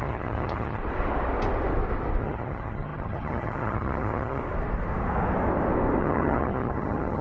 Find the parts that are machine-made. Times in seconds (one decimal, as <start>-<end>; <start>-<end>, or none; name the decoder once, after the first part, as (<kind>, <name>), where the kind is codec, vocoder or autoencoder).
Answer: 0.0-0.8 (vocoder, HiFi-GAN); 2.2-4.4; 6.0-7.2